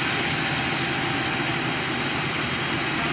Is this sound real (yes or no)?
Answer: yes